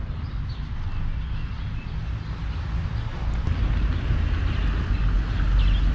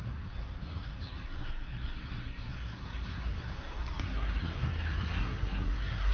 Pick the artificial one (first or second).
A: second